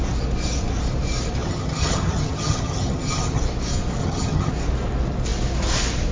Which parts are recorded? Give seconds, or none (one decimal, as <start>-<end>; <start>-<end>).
0.0-1.4; 3.4-4.0; 4.5-6.1